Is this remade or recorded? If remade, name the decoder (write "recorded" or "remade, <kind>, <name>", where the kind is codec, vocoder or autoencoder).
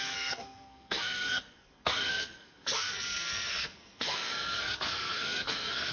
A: remade, codec, SNAC